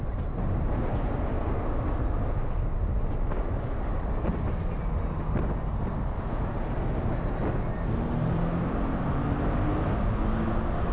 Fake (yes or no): no